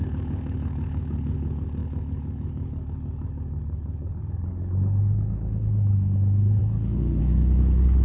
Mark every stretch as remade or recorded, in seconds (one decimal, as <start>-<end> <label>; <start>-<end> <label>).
0.0-8.0 remade